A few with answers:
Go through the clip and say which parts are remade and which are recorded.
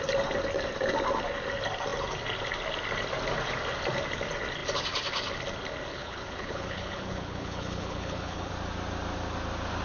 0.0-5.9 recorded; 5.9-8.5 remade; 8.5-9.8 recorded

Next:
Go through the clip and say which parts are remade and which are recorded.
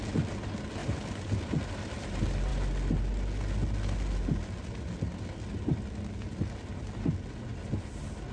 0.0-8.3 recorded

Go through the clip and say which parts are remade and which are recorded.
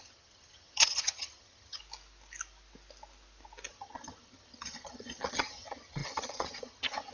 0.0-1.8 remade; 1.8-3.7 recorded; 3.7-7.1 remade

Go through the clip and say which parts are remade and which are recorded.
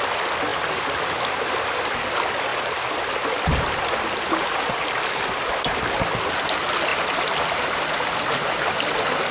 0.0-9.3 recorded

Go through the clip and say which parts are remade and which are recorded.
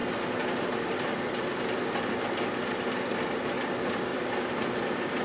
0.0-4.1 recorded; 4.1-5.2 remade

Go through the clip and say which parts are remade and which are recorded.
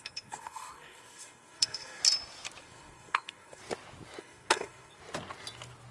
0.0-2.0 remade; 2.0-2.6 recorded; 2.6-3.6 remade; 3.6-4.2 recorded; 4.2-5.0 remade; 5.0-5.9 recorded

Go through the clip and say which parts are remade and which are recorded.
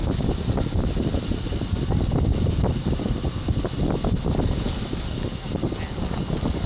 0.0-6.7 recorded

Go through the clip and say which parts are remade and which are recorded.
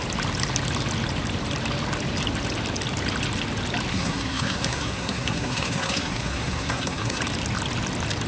0.0-3.9 recorded; 3.9-7.2 remade; 7.2-8.3 recorded